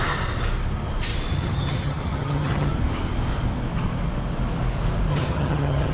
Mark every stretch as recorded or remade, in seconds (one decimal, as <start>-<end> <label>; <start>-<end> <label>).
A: 0.0-1.3 recorded; 1.3-2.7 remade; 2.7-5.1 recorded; 5.1-5.9 remade